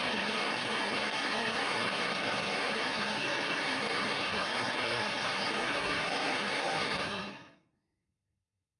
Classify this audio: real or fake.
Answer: fake